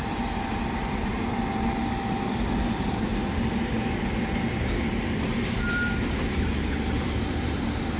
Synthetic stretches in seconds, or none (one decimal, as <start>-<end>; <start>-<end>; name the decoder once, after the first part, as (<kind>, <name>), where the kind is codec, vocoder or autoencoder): 0.0-3.1 (vocoder, BigVGAN v2); 4.2-8.0